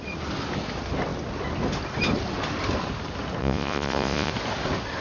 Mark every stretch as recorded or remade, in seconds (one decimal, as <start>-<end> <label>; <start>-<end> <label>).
0.0-3.4 recorded; 3.4-4.3 remade; 4.3-5.0 recorded